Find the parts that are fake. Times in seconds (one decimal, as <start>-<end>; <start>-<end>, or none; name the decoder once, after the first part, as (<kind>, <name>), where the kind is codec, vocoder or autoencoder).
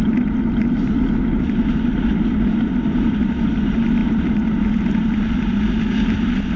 0.0-6.6 (vocoder, BigVGAN v2)